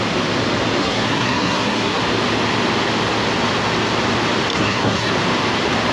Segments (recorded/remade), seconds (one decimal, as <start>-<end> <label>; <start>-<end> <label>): 0.0-0.8 recorded; 0.8-2.0 remade; 2.0-4.5 recorded; 4.5-5.1 remade; 5.1-5.9 recorded